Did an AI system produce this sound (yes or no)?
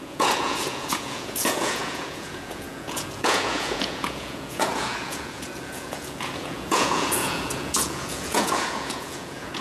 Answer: yes